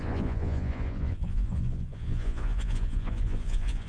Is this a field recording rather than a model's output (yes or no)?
no